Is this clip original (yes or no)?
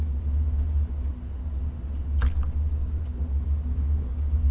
yes